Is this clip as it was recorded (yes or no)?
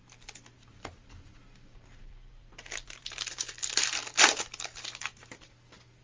no